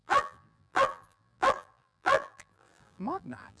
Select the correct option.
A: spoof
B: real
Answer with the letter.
A